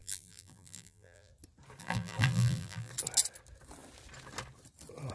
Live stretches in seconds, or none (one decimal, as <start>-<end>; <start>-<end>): 1.3-1.8; 2.9-5.1